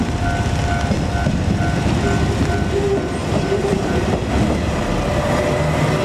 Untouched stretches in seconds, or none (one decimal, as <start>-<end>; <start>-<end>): 0.0-3.2; 5.3-6.0